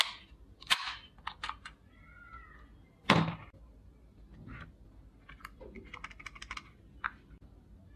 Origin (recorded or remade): recorded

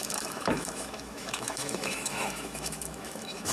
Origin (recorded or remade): remade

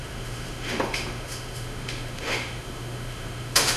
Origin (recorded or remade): remade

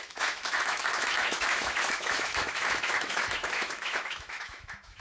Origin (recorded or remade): remade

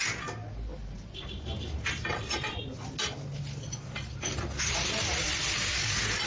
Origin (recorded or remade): recorded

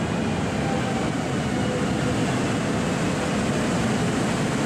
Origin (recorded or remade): recorded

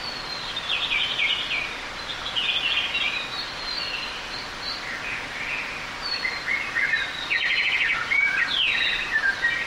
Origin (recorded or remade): recorded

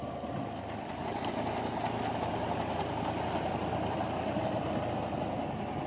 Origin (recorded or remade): recorded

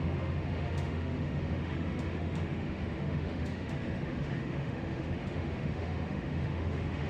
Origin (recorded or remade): remade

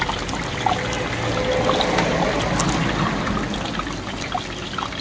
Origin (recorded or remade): recorded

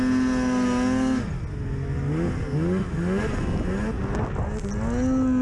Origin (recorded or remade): recorded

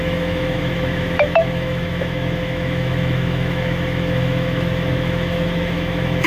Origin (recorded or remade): remade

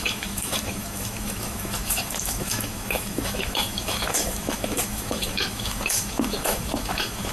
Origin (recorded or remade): remade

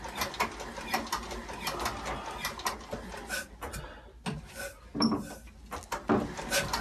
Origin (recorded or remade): recorded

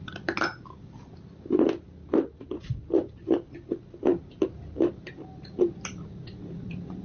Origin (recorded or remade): recorded